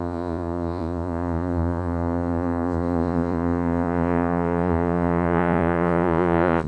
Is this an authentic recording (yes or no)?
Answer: no